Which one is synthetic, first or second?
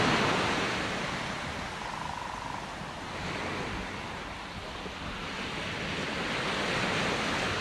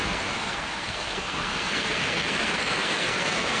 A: second